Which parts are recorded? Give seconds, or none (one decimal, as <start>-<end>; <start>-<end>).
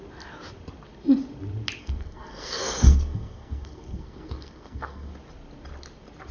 0.0-1.8; 5.1-6.3